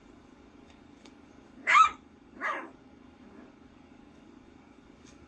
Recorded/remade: remade